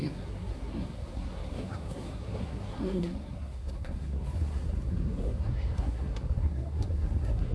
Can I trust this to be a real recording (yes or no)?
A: no